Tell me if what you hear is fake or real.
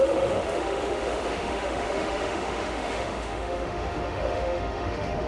fake